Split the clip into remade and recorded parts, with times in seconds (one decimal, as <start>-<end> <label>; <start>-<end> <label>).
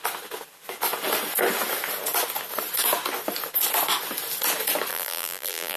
0.0-4.9 recorded; 4.9-5.8 remade